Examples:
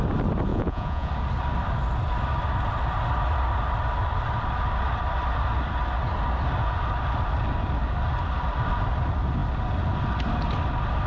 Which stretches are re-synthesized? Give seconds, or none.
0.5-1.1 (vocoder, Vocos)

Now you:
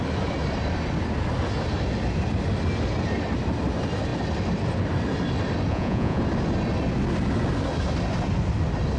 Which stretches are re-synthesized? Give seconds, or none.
5.7-6.2 (vocoder, Vocos)

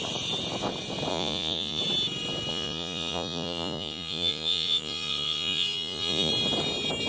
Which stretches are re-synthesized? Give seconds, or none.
1.1-1.8 (vocoder, Vocos); 2.5-6.3

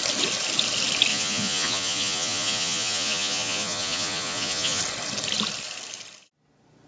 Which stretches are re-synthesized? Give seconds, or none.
1.1-4.8 (vocoder, Vocos)

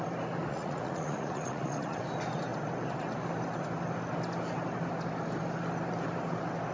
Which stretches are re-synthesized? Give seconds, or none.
0.5-2.0 (vocoder, Vocos)

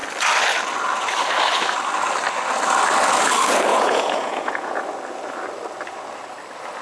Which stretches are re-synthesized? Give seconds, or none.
3.7-4.8 (vocoder, Vocos)